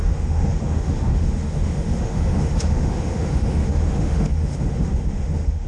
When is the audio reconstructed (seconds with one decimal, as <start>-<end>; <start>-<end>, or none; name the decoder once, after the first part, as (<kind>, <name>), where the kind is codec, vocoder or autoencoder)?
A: 0.0-5.7 (autoencoder, DAC-VAE)